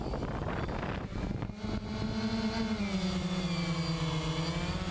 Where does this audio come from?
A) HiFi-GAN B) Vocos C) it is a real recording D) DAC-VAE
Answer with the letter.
C